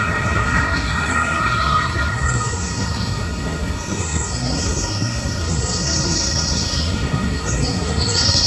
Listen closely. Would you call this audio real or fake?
fake